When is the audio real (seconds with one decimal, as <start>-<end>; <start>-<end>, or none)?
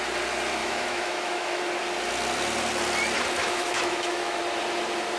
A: 0.0-0.6; 1.6-3.4; 4.4-5.2